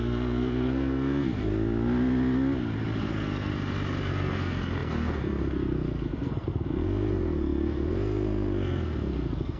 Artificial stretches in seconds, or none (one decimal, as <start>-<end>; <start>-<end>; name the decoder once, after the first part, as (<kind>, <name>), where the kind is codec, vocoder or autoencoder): 0.0-1.5 (codec, SNAC); 3.1-3.5; 4.1-9.6